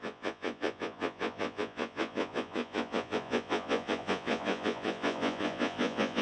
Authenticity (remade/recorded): remade